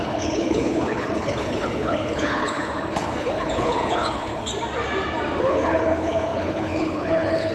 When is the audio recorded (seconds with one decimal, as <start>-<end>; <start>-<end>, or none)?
4.5-5.4